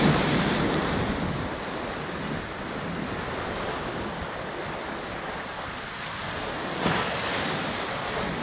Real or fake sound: real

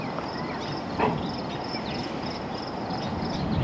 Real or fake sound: real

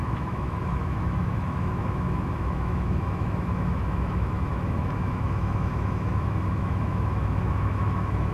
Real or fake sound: fake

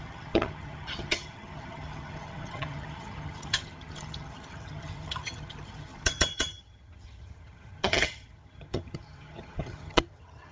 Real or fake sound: fake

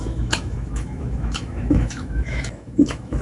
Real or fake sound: fake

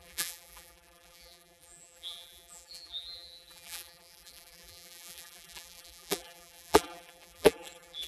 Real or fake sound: fake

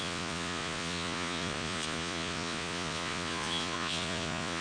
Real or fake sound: fake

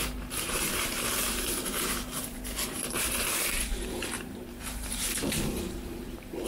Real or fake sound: fake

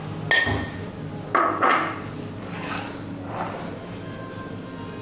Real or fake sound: real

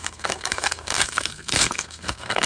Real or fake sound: fake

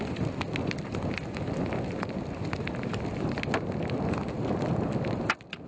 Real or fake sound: real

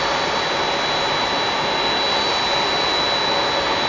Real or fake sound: real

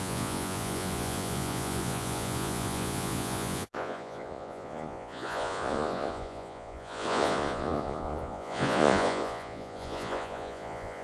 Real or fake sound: fake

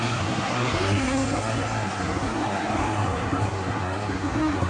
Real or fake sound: fake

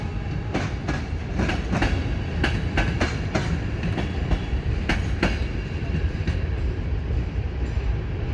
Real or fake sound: fake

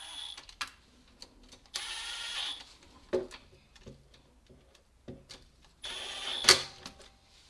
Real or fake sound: real